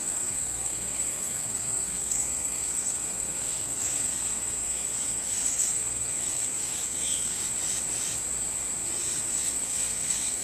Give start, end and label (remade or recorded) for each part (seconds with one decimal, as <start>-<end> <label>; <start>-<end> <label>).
0.0-7.4 remade; 7.4-9.2 recorded; 9.2-10.4 remade